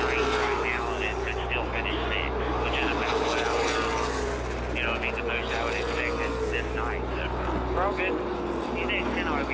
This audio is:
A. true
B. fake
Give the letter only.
A